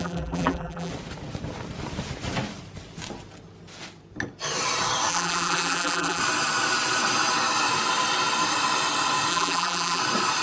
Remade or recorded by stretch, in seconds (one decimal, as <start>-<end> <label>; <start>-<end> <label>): 0.0-0.9 remade; 0.9-5.1 recorded; 5.1-6.2 remade; 6.2-9.3 recorded; 9.3-10.0 remade; 10.0-10.4 recorded